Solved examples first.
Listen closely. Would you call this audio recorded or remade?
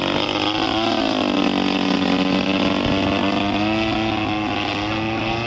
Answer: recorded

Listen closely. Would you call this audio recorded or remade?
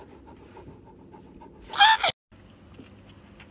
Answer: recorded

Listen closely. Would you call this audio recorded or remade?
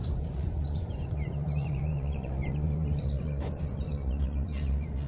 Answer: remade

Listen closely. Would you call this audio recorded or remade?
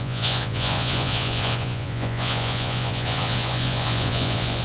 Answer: remade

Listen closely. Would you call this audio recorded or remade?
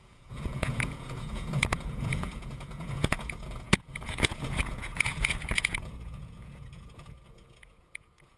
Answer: remade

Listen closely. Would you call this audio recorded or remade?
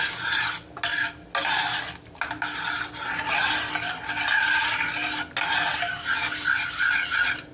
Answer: recorded